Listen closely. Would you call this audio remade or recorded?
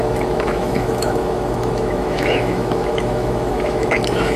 remade